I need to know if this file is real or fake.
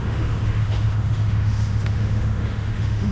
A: fake